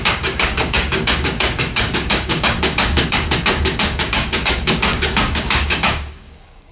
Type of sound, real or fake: fake